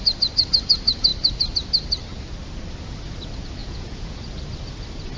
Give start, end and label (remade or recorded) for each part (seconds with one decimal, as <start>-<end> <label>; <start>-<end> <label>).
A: 0.0-3.6 recorded; 3.6-4.2 remade; 4.2-5.2 recorded